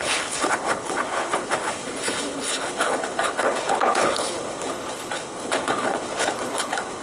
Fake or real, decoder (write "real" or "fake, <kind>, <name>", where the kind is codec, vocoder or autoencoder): fake, codec, HILCodec